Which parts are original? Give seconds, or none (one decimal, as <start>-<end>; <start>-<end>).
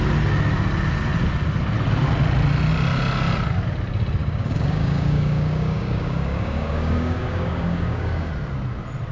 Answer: 0.0-4.2; 8.3-9.1